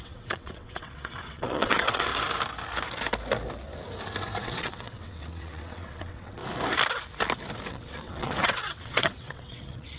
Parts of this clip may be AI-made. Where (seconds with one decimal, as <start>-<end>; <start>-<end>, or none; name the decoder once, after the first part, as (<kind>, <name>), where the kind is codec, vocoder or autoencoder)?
0.0-2.1 (vocoder, WaveNeXt); 4.4-6.4; 7.7-10.0